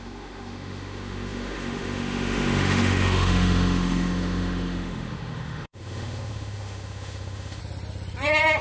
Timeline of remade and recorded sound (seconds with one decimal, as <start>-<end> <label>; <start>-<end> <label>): 0.0-7.6 remade; 7.6-8.6 recorded